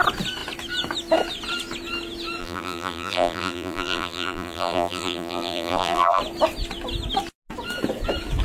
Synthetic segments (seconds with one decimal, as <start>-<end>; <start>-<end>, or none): 2.4-6.2